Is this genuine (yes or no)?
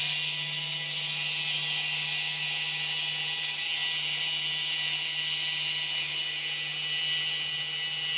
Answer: yes